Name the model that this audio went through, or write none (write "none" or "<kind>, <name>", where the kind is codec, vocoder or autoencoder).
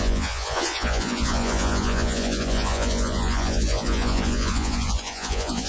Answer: vocoder, Vocos